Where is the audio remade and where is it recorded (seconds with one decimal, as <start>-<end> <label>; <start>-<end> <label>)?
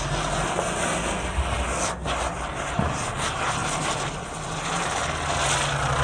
0.0-6.0 recorded